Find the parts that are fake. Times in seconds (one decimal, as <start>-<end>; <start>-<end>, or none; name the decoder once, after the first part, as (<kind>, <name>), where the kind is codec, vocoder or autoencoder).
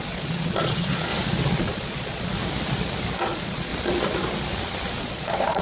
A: 0.0-1.1 (vocoder, Vocos); 1.6-2.4; 3.2-3.7; 5.0-5.6